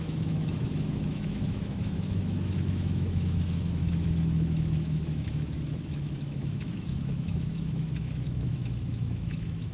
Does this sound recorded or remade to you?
remade